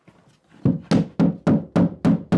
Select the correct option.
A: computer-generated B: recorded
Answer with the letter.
B